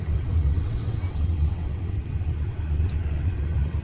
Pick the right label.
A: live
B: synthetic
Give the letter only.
B